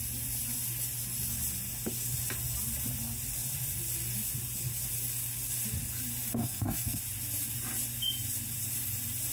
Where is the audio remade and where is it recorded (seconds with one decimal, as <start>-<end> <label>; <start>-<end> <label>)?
0.0-6.4 recorded; 6.4-7.0 remade; 7.0-9.3 recorded